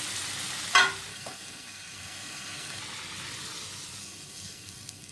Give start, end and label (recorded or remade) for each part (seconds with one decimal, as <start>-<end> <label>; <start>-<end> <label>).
0.0-1.1 recorded; 1.1-2.8 remade; 2.8-4.0 recorded; 4.0-5.1 remade